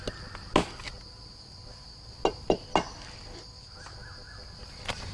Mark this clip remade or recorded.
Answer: recorded